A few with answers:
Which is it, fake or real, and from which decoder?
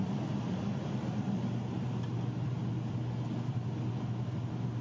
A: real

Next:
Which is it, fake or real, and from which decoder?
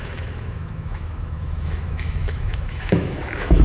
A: fake, autoencoder, DAC-VAE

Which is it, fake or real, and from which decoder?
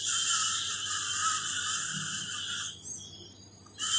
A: real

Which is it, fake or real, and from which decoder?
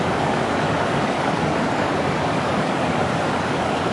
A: fake, codec, DAC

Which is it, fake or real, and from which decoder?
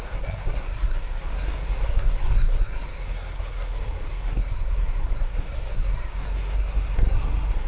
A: fake, codec, SNAC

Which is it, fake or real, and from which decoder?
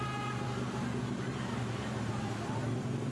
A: real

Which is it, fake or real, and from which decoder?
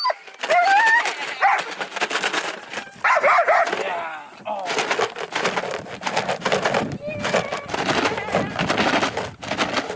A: real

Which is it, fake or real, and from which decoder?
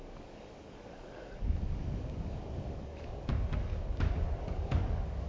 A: fake, codec, DAC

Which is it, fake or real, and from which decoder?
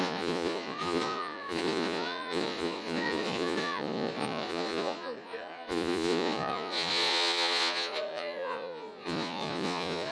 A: fake, vocoder, Vocos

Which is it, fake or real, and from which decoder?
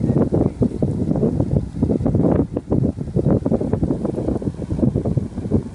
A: real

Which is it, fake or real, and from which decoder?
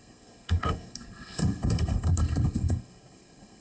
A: fake, codec, SNAC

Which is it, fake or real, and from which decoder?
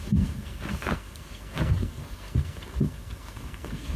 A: fake, codec, SNAC